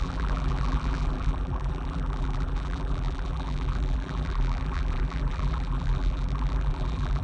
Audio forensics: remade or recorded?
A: remade